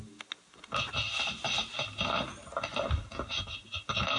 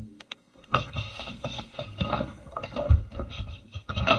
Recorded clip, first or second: first